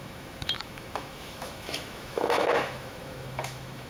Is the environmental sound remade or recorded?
remade